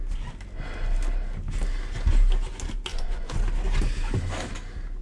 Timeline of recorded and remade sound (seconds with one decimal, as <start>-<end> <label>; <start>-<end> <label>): 0.0-2.9 recorded; 2.9-3.4 remade; 3.4-5.0 recorded